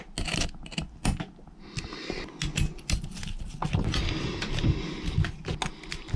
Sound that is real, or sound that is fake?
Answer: real